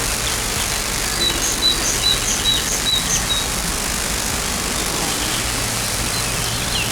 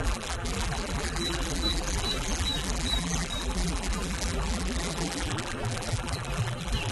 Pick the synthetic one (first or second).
second